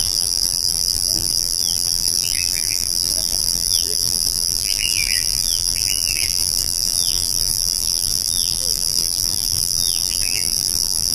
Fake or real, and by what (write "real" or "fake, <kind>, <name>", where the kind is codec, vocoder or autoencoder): fake, vocoder, BigVGAN v2